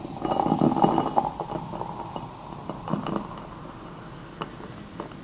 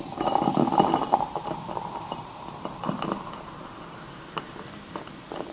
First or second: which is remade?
second